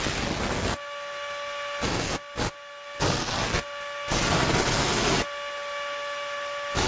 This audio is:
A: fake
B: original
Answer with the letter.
B